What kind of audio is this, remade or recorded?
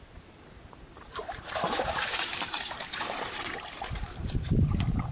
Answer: remade